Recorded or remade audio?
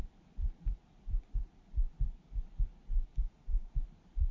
recorded